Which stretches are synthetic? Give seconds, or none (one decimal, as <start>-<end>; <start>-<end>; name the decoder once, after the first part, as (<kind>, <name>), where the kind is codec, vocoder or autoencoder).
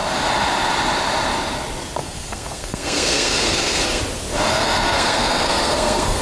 2.0-4.0 (codec, SNAC); 4.5-6.2